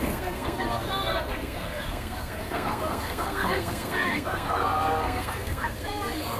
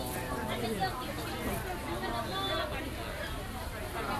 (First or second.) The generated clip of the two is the first